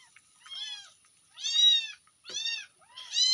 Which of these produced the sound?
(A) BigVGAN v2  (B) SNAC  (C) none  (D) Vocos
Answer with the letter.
C